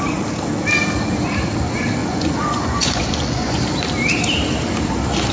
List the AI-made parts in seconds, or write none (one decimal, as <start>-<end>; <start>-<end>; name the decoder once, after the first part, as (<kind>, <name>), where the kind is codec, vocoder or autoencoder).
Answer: 2.0-3.6 (vocoder, Vocos)